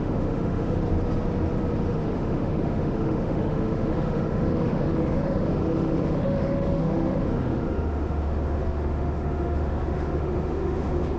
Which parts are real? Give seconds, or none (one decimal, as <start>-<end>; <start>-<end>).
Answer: 0.8-1.8